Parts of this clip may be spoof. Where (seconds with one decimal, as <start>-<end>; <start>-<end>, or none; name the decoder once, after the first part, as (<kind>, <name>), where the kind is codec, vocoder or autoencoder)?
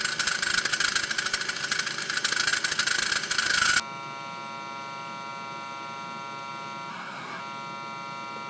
6.9-7.4 (codec, SNAC)